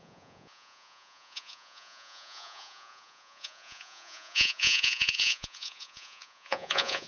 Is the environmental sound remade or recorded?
remade